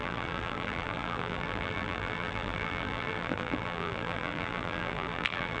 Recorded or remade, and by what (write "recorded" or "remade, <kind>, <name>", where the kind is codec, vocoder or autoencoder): remade, vocoder, BigVGAN v2